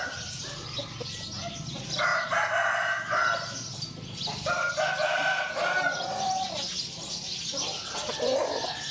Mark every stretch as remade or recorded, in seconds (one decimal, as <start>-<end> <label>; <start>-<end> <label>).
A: 0.0-8.9 recorded